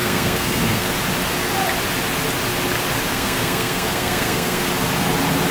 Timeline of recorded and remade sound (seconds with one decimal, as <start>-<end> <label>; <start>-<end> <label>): 0.0-0.9 remade; 0.9-3.1 recorded; 3.1-4.7 remade; 4.7-5.5 recorded